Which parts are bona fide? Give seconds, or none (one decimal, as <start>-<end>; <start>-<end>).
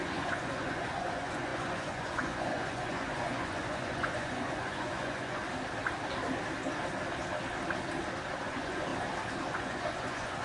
5.4-8.4; 8.9-9.5